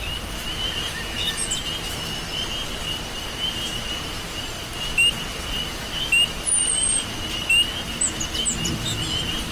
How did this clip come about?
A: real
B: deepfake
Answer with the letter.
A